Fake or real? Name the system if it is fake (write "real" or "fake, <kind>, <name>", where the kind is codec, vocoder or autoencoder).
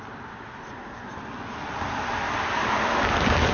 real